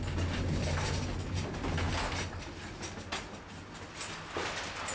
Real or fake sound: real